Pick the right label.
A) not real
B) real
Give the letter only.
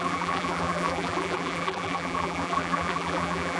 A